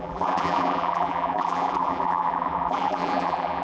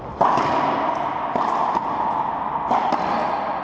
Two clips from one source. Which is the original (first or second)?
second